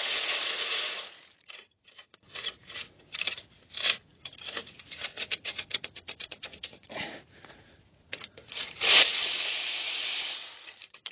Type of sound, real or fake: fake